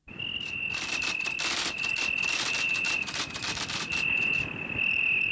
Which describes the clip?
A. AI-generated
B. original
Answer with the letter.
B